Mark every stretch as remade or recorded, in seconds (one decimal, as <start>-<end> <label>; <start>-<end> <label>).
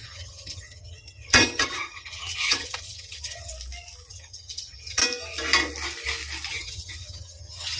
0.0-3.5 remade; 3.5-4.1 recorded; 4.1-5.0 remade; 5.0-6.5 recorded; 6.5-7.8 remade